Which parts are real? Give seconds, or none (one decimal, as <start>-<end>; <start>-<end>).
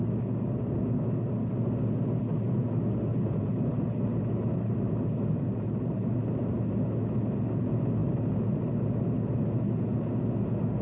0.0-3.1; 6.7-8.0; 9.0-10.8